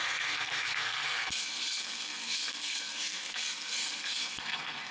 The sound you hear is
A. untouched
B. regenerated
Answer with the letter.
B